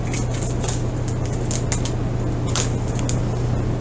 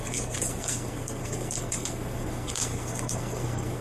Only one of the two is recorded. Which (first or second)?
first